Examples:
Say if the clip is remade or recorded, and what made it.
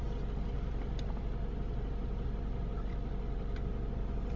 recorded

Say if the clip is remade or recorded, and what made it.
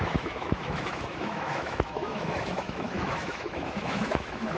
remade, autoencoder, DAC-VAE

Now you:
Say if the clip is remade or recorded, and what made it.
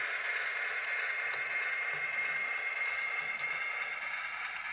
recorded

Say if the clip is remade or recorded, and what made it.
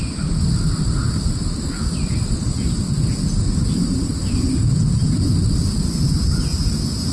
recorded